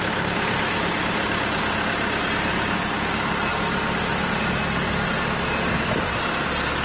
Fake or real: real